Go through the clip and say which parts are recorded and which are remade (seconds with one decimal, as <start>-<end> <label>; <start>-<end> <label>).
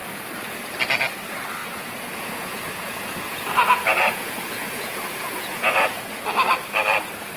0.0-1.6 recorded; 1.6-6.0 remade; 6.0-7.4 recorded